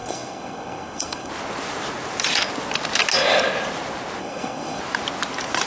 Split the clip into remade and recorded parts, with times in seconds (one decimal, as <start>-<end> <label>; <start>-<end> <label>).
0.0-1.3 remade; 1.3-4.2 recorded; 4.2-4.8 remade; 4.8-5.7 recorded

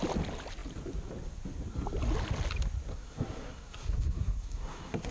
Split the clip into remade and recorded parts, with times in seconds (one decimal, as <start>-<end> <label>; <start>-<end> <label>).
0.0-2.9 recorded; 2.9-5.1 remade

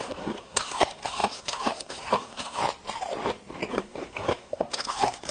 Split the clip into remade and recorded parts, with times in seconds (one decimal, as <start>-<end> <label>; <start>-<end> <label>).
0.0-2.6 remade; 2.6-3.7 recorded; 3.7-5.3 remade

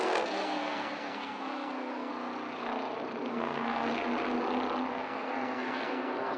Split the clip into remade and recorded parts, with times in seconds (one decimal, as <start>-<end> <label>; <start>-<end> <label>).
0.0-2.1 remade; 2.1-3.3 recorded; 3.3-3.9 remade; 3.9-4.9 recorded; 4.9-6.4 remade